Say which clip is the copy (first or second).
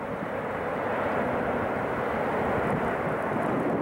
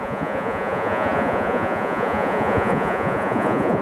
second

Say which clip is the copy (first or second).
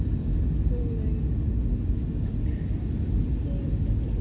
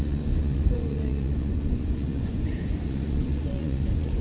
second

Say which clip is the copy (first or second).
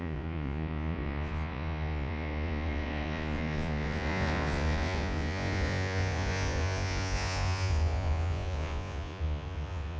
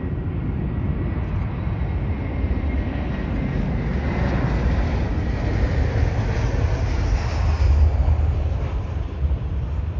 first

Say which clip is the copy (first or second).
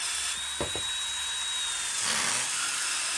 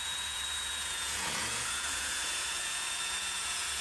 second